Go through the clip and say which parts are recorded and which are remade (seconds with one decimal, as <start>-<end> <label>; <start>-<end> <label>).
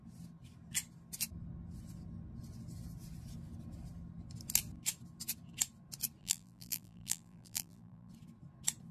0.0-6.2 recorded; 6.2-8.1 remade; 8.1-8.9 recorded